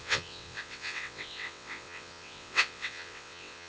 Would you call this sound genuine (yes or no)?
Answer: no